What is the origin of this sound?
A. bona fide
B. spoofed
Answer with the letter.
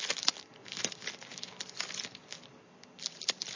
A